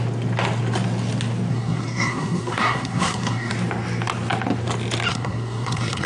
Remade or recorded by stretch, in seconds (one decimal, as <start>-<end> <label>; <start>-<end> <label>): 0.0-1.5 recorded; 1.5-3.5 remade; 3.5-5.1 recorded; 5.1-6.1 remade